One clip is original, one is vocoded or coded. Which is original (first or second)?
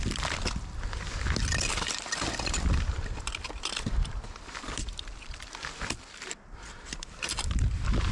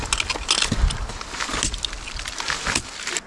second